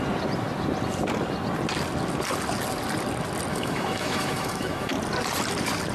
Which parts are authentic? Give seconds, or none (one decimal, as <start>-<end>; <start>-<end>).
0.0-3.5; 4.9-5.9